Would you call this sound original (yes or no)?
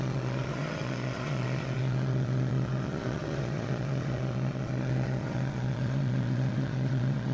no